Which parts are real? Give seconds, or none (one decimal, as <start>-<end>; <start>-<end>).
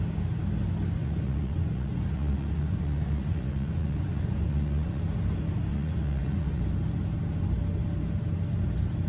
0.0-1.0; 5.0-5.7; 6.6-9.1